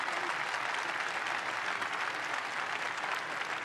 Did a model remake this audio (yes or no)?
no